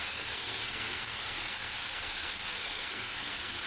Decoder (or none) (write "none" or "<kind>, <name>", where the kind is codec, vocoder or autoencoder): codec, SNAC